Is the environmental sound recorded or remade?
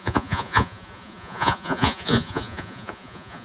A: remade